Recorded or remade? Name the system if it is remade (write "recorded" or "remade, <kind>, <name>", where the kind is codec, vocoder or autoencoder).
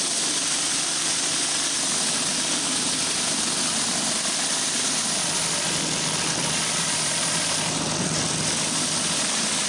recorded